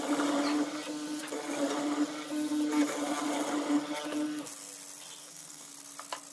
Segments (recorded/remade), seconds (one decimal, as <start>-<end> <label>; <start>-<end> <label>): 0.0-5.2 recorded; 5.2-5.7 remade; 5.7-6.3 recorded